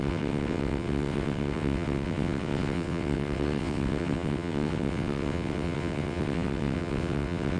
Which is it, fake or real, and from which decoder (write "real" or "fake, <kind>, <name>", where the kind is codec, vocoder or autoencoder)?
fake, vocoder, WaveNeXt